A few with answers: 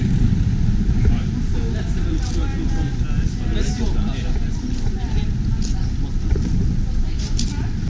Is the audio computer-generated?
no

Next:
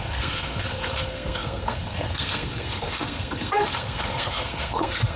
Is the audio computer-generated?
yes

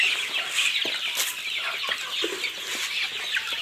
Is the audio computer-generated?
no